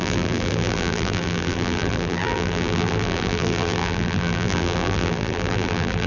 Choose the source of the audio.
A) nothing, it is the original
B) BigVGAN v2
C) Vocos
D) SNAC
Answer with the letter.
B